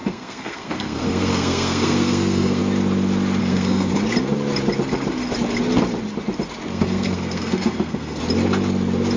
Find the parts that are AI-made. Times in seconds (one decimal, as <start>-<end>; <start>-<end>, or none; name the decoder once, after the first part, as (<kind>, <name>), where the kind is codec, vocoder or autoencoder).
0.0-2.6 (codec, SNAC); 3.4-3.9; 6.7-8.2